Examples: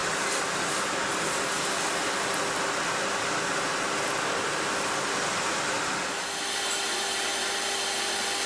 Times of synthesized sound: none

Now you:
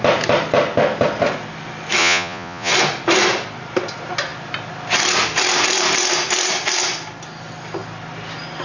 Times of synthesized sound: 2.0-2.7 (vocoder, Vocos)